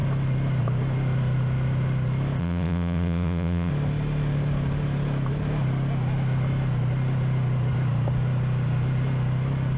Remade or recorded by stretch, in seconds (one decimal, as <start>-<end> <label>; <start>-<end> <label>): 0.0-2.4 recorded; 2.4-3.7 remade; 3.7-9.8 recorded